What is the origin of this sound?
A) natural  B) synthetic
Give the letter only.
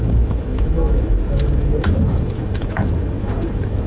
B